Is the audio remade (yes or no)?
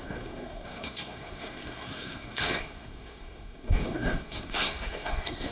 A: yes